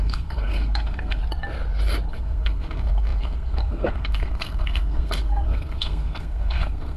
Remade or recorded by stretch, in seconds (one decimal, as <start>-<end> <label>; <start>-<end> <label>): 0.0-1.2 remade; 1.2-2.1 recorded; 2.1-7.0 remade

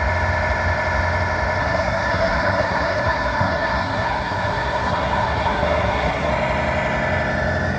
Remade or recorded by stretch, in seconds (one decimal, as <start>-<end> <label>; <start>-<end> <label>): 0.0-1.6 recorded; 1.6-6.3 remade; 6.3-7.8 recorded